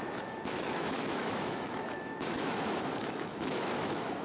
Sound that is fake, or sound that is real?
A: fake